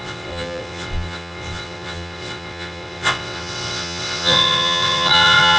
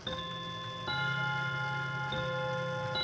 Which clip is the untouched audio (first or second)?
second